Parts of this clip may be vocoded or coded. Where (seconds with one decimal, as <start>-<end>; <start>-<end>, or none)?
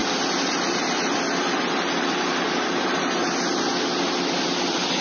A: 0.0-3.0